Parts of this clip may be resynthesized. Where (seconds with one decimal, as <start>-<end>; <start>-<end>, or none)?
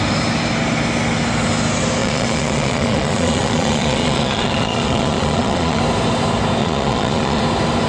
2.0-5.8; 6.6-7.4